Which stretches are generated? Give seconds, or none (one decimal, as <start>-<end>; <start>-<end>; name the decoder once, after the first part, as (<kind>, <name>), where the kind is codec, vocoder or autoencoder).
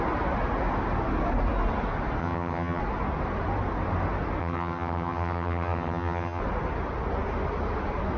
2.2-2.8 (vocoder, HiFi-GAN); 4.4-6.4